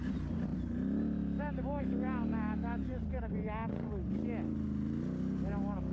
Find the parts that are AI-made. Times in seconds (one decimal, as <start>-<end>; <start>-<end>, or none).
none